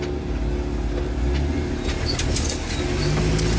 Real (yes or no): yes